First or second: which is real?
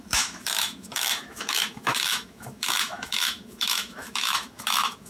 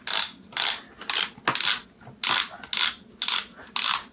second